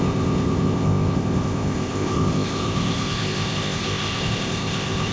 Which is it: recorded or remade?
remade